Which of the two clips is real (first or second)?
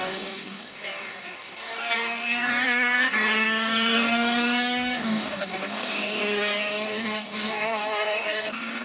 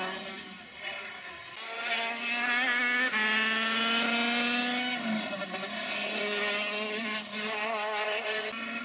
second